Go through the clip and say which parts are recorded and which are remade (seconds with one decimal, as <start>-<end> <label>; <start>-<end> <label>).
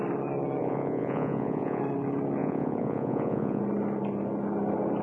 0.0-0.6 recorded; 0.6-1.8 remade; 1.8-2.4 recorded; 2.4-3.6 remade; 3.6-5.0 recorded